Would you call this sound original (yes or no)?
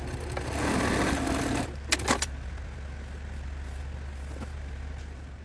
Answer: yes